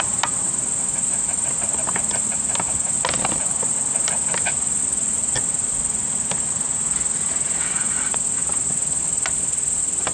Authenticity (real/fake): real